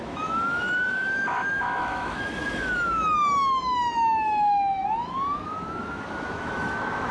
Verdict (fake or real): fake